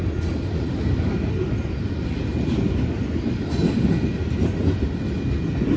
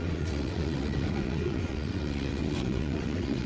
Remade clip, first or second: second